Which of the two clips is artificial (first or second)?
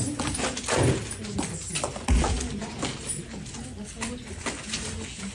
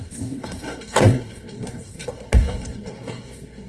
second